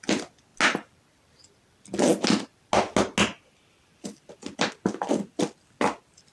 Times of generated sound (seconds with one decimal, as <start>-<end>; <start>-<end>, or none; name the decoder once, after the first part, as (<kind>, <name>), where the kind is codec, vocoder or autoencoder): none